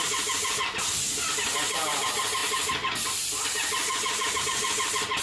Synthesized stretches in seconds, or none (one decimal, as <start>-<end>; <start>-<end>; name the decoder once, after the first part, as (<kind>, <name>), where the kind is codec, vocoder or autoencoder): none